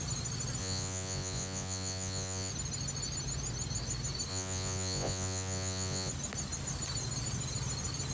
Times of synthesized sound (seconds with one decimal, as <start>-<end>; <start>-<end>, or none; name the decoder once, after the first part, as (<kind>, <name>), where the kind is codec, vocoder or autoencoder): 0.6-2.5 (vocoder, Vocos); 4.3-6.1